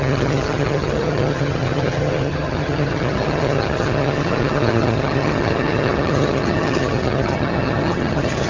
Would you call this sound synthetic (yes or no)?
yes